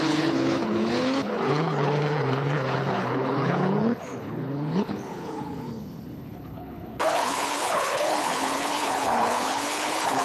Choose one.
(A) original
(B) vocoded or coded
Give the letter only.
B